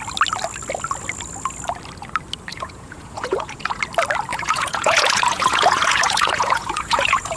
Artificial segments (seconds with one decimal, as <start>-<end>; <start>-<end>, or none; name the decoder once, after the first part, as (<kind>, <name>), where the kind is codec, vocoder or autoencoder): 2.5-3.8 (vocoder, Vocos); 4.3-7.4